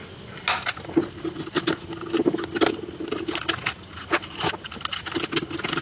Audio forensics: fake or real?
real